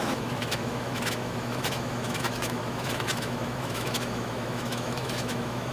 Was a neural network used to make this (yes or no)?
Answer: yes